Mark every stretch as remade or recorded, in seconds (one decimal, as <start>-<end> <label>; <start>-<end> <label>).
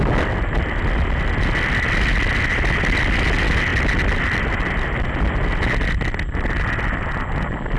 0.0-7.8 recorded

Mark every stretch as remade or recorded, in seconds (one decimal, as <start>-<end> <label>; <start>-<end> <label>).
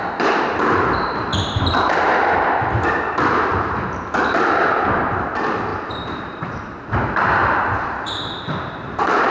0.0-5.7 recorded; 5.7-6.6 remade; 6.6-7.4 recorded; 7.4-9.3 remade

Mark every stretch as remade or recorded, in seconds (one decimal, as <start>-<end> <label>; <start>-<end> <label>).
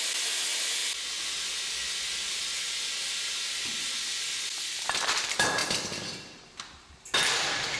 0.0-7.8 recorded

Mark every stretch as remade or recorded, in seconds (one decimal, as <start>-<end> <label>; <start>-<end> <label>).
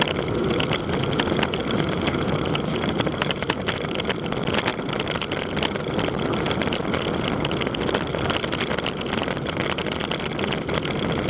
0.0-1.6 recorded; 1.6-3.6 remade; 3.6-11.3 recorded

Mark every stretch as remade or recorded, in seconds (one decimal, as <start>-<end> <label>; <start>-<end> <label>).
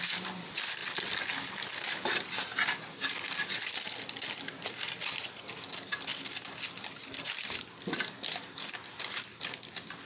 0.0-10.0 recorded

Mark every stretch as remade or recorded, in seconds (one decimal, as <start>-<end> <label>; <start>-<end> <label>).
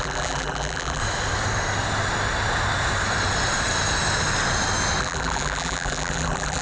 0.0-1.0 remade; 1.0-5.0 recorded; 5.0-6.6 remade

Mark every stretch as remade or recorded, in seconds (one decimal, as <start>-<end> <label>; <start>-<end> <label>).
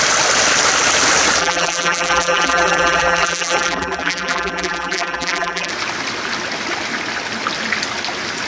0.0-1.4 recorded; 1.4-5.7 remade; 5.7-8.5 recorded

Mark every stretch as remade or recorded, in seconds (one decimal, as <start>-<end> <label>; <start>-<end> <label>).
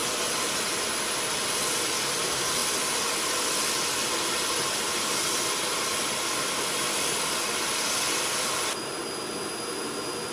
0.0-10.3 recorded